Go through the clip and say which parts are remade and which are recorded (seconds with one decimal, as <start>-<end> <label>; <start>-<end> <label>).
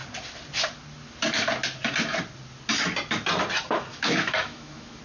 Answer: 0.0-3.9 recorded; 3.9-5.0 remade